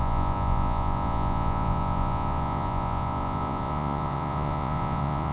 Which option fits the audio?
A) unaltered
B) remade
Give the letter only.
B